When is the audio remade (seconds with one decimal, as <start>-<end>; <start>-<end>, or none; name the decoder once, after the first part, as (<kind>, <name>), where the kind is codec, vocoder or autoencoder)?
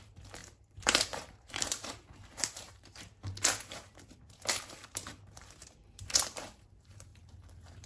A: 0.0-7.1 (vocoder, BigVGAN v2)